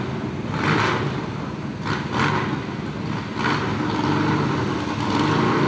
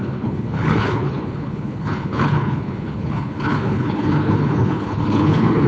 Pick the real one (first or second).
first